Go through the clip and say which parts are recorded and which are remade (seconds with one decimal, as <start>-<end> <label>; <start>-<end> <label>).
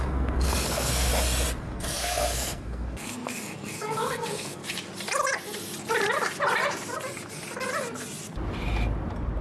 0.0-1.1 remade; 1.1-1.6 recorded; 1.6-4.6 remade; 4.6-9.4 recorded